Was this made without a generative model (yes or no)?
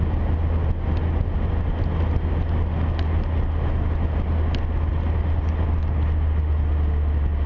yes